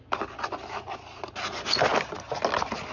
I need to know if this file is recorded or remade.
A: recorded